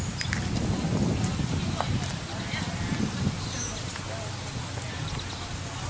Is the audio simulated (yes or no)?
no